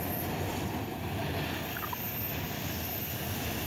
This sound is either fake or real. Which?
real